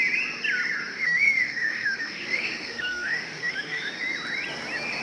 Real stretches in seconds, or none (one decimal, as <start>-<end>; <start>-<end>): 0.0-0.9; 3.9-5.0